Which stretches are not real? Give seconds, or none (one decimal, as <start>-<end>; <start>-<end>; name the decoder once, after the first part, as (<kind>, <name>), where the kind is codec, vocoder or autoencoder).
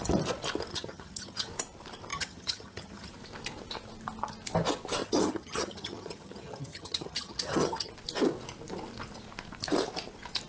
0.7-1.5 (vocoder, HiFi-GAN); 2.1-3.1; 5.0-7.9